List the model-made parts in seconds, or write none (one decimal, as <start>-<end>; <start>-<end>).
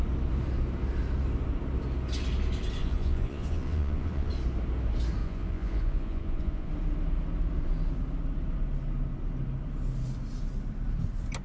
2.8-4.3; 5.2-6.7